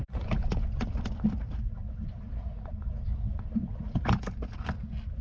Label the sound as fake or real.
real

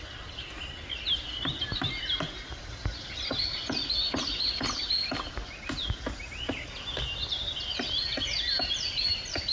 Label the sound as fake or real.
real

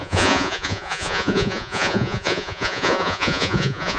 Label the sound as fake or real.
fake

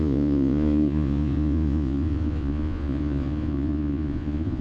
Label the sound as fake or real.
fake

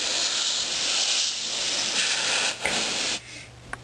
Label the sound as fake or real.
real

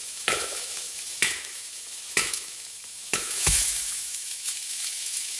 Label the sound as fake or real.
fake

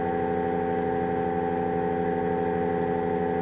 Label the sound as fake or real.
real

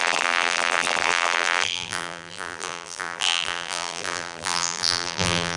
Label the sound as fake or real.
fake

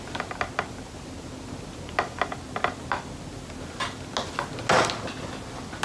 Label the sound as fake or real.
real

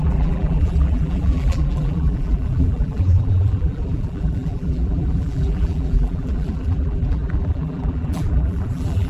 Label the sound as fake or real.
fake